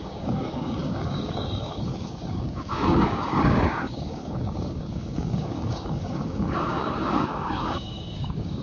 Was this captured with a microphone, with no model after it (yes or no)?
no